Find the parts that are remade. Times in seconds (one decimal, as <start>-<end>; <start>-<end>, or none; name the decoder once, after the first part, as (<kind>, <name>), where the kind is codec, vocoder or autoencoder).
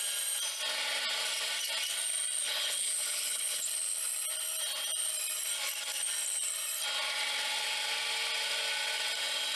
2.4-3.6 (codec, HILCodec)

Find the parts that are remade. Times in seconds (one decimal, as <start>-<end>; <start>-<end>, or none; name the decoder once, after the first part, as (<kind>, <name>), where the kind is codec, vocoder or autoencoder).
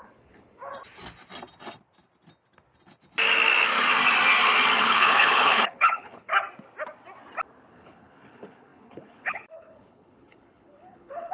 0.0-0.6 (codec, HILCodec); 4.8-6.3; 7.7-11.3